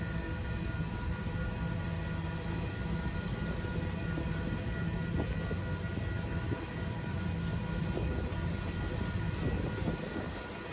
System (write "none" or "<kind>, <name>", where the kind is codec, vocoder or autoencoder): none